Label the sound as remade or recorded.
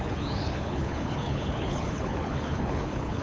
remade